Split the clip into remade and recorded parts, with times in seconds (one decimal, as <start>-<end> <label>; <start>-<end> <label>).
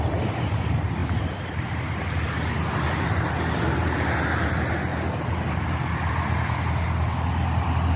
0.0-8.0 recorded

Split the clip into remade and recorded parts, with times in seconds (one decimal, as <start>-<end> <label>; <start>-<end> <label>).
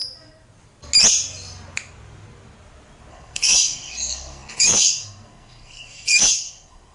0.0-3.1 recorded; 3.1-6.9 remade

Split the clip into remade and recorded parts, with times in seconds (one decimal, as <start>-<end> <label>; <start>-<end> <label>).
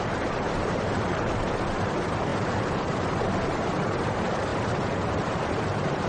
0.0-6.1 remade